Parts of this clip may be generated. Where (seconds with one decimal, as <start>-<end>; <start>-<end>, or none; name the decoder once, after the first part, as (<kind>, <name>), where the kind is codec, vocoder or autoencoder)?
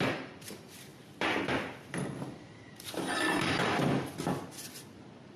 0.9-4.1 (vocoder, BigVGAN v2)